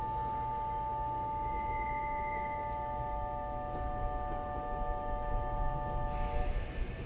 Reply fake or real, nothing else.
real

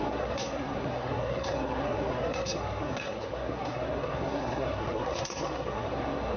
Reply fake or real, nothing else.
fake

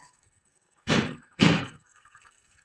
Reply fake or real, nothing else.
fake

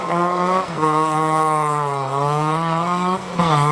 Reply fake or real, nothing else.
fake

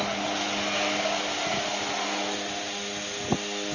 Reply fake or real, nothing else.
real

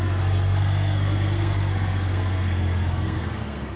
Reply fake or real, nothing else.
fake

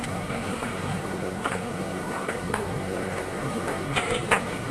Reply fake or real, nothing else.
fake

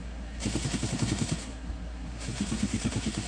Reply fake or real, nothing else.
fake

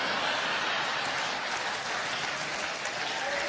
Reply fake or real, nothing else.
real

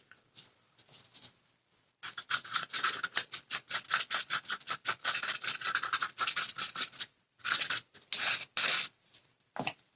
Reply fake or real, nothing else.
real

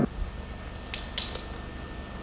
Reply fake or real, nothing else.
real